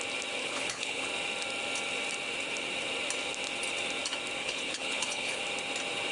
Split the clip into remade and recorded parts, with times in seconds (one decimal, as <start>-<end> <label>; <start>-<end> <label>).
0.0-0.4 recorded; 0.4-1.1 remade; 1.1-4.4 recorded; 4.4-5.4 remade; 5.4-6.1 recorded